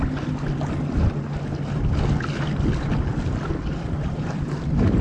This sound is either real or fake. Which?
real